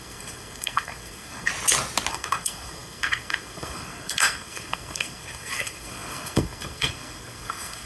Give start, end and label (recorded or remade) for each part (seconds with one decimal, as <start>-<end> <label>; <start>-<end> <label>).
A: 0.0-1.5 remade; 1.5-2.1 recorded; 2.1-7.9 remade